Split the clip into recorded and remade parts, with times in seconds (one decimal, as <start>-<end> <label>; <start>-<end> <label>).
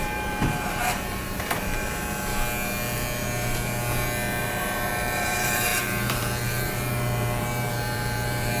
0.0-2.3 remade; 2.3-4.4 recorded; 4.4-8.6 remade